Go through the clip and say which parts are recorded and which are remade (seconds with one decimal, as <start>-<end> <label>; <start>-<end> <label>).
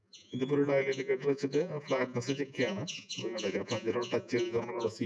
0.0-5.1 remade